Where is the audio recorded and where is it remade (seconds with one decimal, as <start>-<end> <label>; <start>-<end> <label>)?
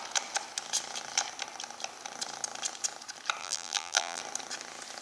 0.0-3.4 recorded; 3.4-4.2 remade; 4.2-5.0 recorded